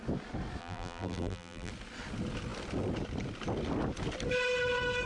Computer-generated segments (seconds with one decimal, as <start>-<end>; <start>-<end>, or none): 0.6-1.7